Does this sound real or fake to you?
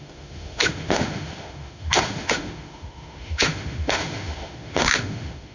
fake